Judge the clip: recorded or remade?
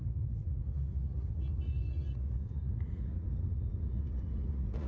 remade